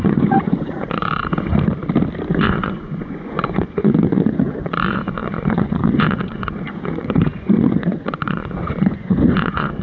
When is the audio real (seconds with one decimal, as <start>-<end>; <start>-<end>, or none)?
1.2-2.3